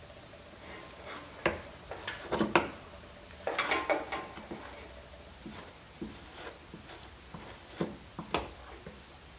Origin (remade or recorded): recorded